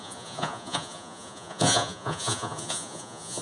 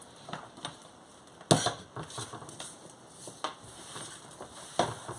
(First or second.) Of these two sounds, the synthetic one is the first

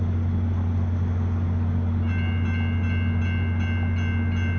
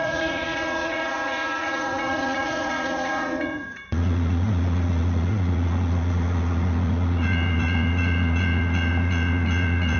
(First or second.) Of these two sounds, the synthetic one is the second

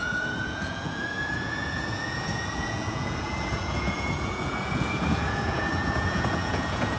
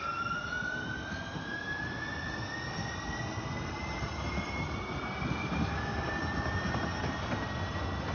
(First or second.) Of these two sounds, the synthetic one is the first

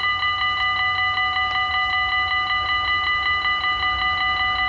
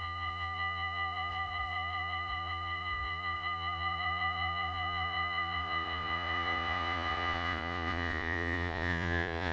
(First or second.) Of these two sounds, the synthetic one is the second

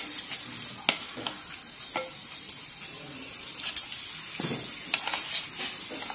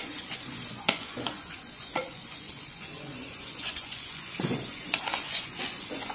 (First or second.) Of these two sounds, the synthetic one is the second